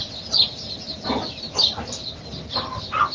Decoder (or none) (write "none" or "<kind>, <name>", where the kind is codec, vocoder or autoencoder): none